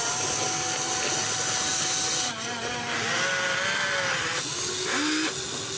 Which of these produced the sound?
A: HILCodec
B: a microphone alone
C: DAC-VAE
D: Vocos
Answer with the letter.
B